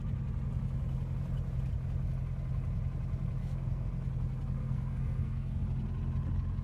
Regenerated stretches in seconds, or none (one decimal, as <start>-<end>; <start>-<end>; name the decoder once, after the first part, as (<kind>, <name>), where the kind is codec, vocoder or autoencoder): 3.4-3.9 (codec, SNAC); 4.6-5.6